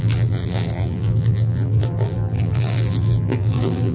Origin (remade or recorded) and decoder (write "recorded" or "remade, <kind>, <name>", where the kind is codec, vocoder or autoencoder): remade, vocoder, BigVGAN v2